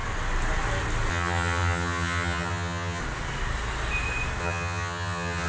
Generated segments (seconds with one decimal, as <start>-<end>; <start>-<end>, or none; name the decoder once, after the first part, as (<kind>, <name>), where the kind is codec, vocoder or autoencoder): 1.1-3.0 (vocoder, HiFi-GAN); 4.4-5.5